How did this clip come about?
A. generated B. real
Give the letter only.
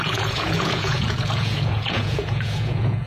A